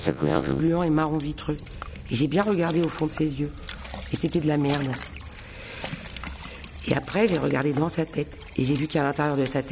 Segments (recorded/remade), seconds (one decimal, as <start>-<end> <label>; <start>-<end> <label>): 0.0-0.6 remade; 0.6-9.7 recorded